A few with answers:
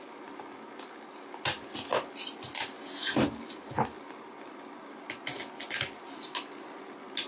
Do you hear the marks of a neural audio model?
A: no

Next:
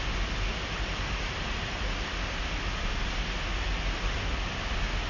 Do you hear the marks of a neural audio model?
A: no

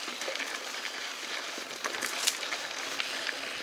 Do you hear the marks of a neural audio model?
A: no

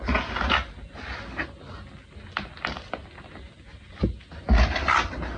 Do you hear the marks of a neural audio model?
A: no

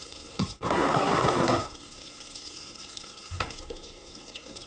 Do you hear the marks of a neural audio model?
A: yes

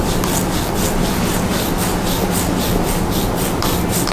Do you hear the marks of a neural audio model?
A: no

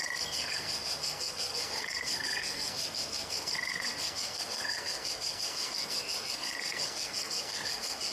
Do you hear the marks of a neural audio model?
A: yes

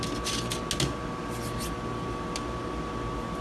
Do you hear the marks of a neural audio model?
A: no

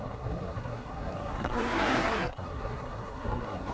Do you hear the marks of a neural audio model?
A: yes